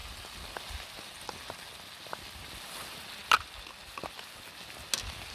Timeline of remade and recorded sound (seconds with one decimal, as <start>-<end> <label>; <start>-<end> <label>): 0.0-5.3 recorded